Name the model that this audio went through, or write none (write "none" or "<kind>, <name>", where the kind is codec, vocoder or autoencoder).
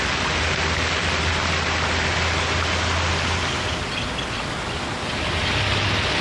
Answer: none